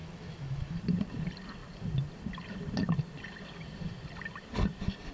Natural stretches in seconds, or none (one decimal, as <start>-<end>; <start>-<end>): 0.8-5.1

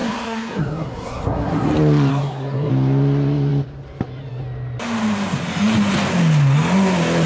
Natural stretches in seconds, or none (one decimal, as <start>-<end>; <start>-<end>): 1.7-2.1; 2.7-7.3

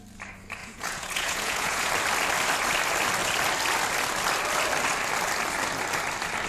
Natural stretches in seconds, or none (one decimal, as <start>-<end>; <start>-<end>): 0.0-0.6; 1.9-6.5

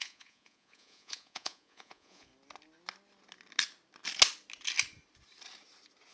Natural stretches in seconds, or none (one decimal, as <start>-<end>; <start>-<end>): 2.3-6.1